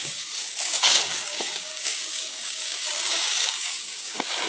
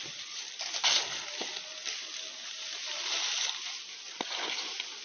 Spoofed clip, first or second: first